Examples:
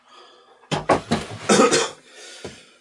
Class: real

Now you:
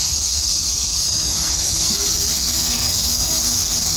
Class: fake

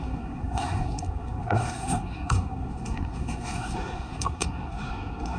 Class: fake